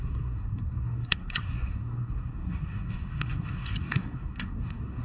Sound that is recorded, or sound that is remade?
remade